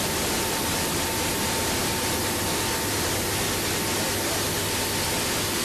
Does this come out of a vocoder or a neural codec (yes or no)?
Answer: no